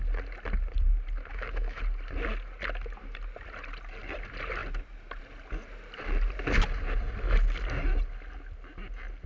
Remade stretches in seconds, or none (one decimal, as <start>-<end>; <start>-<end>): 1.3-1.8